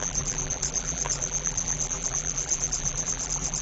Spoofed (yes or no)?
yes